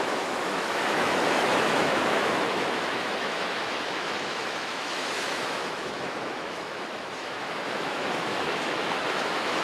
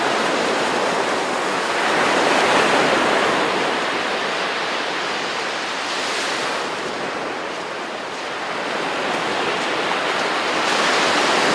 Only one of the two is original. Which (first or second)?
second